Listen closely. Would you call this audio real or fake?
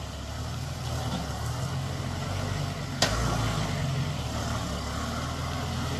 real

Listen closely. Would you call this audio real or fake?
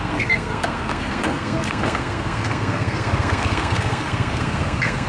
fake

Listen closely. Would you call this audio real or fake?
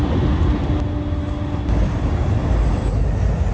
real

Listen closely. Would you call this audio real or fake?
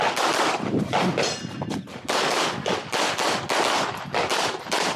real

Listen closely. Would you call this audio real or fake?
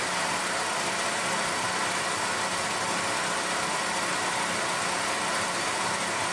real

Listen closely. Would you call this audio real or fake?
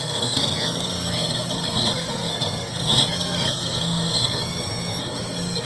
fake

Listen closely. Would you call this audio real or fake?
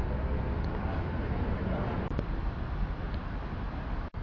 real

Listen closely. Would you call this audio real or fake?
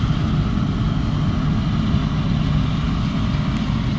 real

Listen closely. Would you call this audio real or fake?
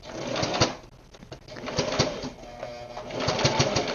real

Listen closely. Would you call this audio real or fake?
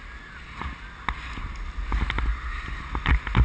real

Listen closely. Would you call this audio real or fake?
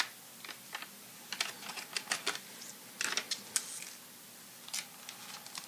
real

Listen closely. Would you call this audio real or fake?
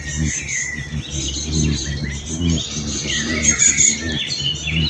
real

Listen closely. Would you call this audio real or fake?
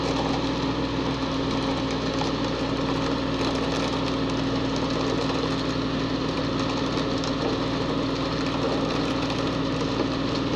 real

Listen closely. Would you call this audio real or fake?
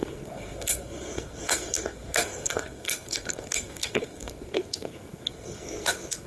fake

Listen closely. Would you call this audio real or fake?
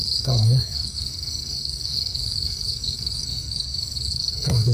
fake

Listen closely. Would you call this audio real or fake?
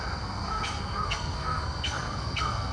fake